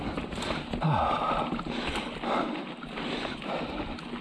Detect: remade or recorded recorded